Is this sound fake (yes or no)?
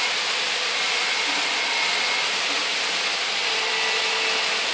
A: no